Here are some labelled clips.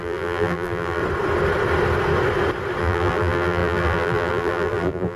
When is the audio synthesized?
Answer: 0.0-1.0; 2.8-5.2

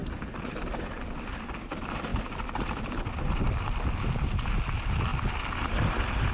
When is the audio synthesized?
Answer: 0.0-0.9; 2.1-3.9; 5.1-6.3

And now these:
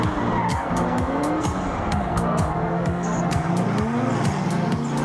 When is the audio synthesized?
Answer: 0.5-3.5